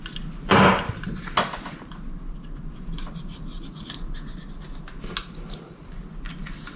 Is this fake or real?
real